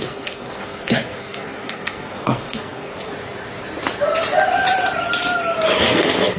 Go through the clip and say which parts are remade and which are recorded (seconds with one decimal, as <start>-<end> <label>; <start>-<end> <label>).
0.0-2.9 remade; 2.9-5.8 recorded; 5.8-6.4 remade